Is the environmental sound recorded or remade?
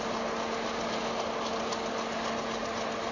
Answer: recorded